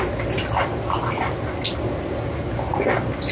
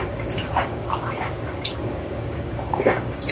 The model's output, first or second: second